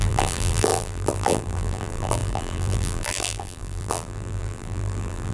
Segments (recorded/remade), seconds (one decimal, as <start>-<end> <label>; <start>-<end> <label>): 0.0-5.3 remade